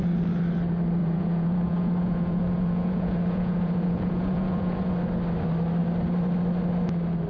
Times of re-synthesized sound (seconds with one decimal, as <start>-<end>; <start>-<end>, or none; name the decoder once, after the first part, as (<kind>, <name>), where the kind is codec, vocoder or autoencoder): 1.0-4.9 (vocoder, Vocos)